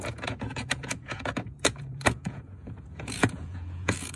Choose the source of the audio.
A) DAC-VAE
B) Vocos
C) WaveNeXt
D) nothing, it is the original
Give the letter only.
B